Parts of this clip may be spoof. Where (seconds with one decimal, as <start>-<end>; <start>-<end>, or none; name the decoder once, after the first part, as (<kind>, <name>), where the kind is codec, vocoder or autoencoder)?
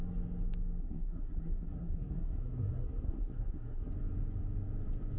0.8-3.9 (codec, SNAC)